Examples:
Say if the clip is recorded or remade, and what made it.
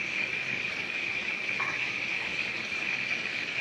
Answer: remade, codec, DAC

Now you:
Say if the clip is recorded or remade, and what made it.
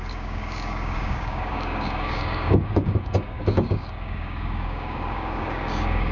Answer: remade, codec, DAC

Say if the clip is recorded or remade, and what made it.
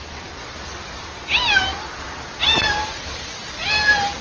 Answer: recorded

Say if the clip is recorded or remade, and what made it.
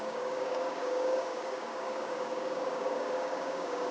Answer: remade, codec, DAC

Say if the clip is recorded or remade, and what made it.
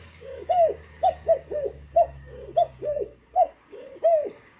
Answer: remade, codec, DAC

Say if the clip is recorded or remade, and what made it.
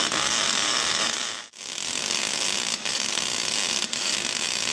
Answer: remade, codec, DAC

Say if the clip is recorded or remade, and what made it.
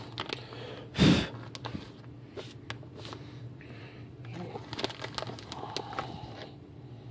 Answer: recorded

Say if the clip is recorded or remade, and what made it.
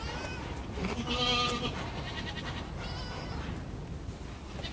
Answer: recorded